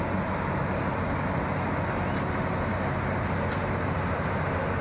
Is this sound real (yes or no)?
yes